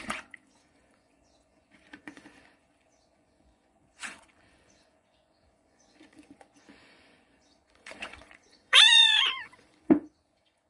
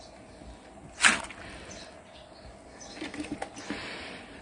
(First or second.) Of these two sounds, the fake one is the first